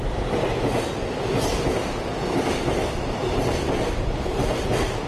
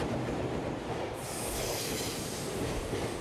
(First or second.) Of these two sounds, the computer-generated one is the second